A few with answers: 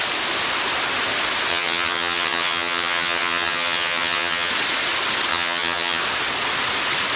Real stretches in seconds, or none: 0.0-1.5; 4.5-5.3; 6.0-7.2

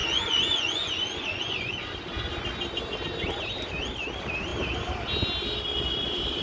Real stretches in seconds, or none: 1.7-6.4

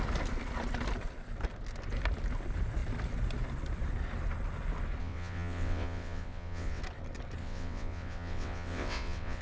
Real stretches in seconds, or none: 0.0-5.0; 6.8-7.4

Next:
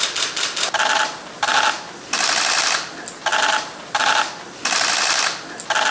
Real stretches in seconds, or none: 0.0-5.9

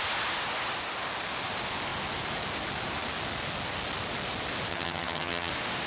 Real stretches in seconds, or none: 0.0-4.7; 5.5-5.9

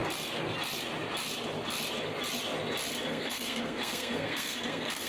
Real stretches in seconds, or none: 0.0-3.1